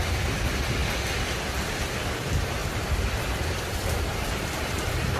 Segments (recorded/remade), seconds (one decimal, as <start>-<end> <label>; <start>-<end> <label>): 0.0-2.6 recorded; 2.6-3.6 remade; 3.6-4.1 recorded; 4.1-5.2 remade